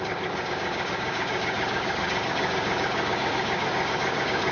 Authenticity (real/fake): fake